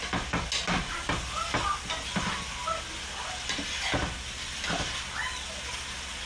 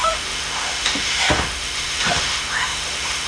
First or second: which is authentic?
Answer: first